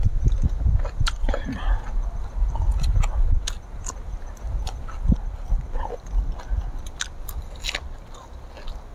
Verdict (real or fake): real